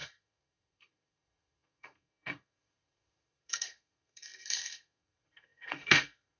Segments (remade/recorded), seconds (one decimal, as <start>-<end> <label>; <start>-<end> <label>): 0.0-6.4 remade